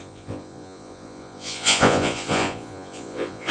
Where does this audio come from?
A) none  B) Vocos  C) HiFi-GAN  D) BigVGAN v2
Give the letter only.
B